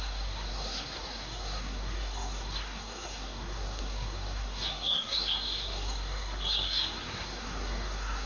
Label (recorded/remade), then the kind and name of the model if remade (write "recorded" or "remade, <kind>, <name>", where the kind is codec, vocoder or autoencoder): remade, codec, SNAC